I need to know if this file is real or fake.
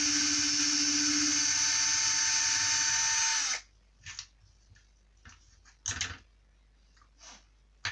real